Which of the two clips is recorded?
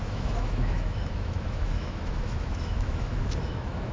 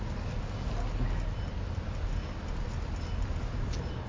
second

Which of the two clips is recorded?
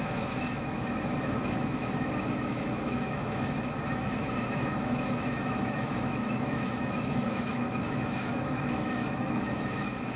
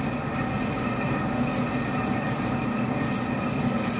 second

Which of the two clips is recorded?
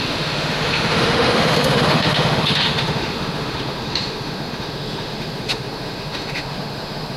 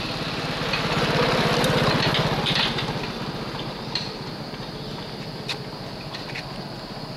second